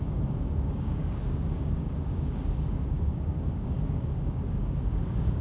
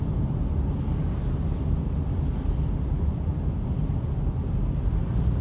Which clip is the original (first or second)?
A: second